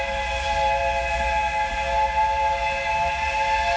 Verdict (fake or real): real